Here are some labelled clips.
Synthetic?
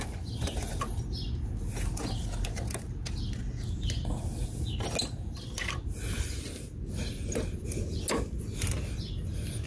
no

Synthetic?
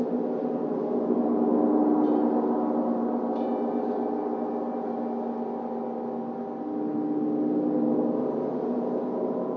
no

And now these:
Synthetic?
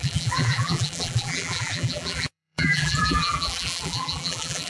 yes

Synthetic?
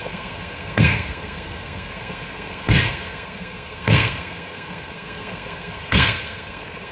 yes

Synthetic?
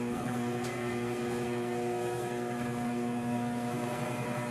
yes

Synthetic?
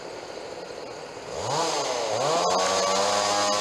no